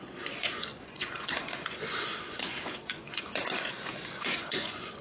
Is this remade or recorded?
remade